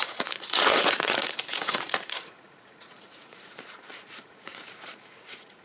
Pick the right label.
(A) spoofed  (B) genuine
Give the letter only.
A